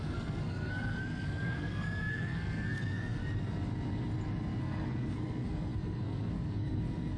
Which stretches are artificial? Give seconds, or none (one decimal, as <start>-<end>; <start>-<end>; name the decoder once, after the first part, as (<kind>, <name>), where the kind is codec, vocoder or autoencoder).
0.0-3.2 (codec, SNAC); 4.6-7.2